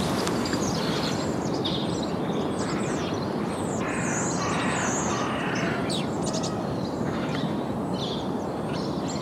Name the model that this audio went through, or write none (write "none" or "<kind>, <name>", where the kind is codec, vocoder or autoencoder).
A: none